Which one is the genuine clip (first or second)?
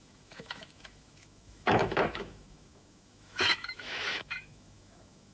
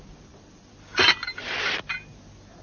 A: second